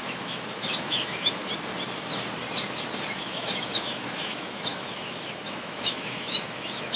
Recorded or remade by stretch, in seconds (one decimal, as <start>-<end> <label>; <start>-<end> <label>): 0.0-1.4 remade; 1.4-3.1 recorded; 3.1-7.0 remade